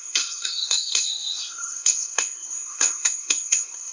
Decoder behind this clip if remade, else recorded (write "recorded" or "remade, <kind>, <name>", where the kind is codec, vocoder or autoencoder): remade, codec, SNAC